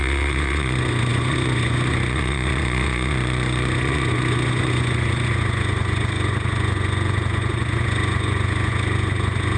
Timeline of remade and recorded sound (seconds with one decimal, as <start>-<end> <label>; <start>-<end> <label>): 0.0-9.6 remade